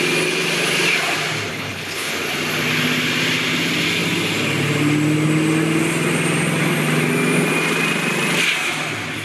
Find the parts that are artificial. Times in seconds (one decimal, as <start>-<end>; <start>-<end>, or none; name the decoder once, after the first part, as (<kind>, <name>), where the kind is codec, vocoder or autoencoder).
1.5-2.1 (codec, HILCodec)